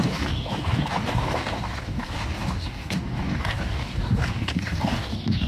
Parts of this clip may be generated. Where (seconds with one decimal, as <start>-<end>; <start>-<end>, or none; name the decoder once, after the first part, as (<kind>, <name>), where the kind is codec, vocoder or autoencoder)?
0.0-5.5 (codec, DAC)